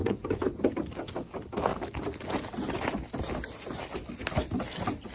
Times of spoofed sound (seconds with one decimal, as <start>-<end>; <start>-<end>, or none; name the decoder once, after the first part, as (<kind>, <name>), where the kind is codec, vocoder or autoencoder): 0.0-0.6 (vocoder, Vocos)